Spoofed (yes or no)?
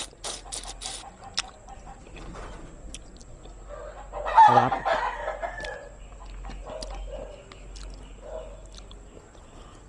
no